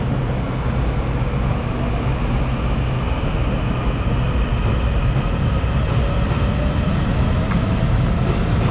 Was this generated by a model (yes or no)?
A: no